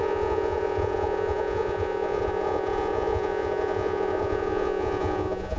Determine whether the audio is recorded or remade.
remade